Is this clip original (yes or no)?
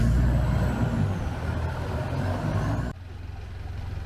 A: yes